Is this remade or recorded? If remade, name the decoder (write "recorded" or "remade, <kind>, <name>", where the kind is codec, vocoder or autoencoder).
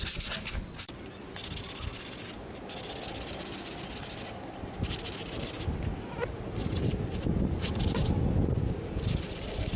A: recorded